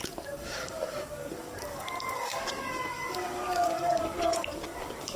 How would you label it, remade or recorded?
remade